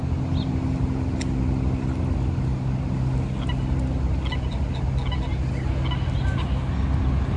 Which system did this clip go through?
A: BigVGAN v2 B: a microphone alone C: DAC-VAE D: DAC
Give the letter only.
B